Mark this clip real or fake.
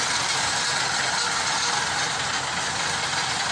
real